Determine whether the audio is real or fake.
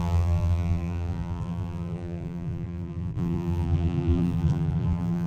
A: fake